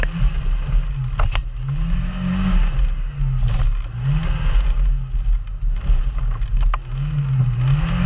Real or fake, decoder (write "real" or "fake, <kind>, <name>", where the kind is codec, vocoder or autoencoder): real